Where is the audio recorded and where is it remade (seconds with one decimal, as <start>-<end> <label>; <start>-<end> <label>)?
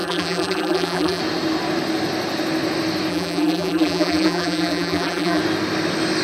0.0-1.2 remade; 1.2-3.1 recorded; 3.1-5.4 remade; 5.4-6.2 recorded